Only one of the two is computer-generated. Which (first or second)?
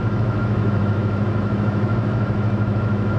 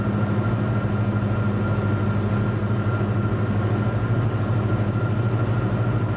first